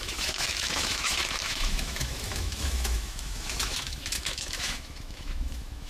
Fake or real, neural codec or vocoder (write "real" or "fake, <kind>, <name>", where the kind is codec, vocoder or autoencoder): fake, autoencoder, DAC-VAE